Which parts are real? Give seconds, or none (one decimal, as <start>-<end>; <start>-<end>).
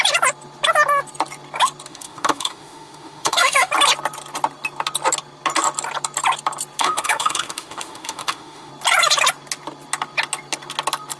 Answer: 0.0-1.9; 3.7-6.8; 8.7-11.2